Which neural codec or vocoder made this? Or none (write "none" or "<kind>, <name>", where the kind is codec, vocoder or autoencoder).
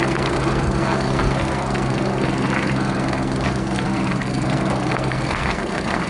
codec, SNAC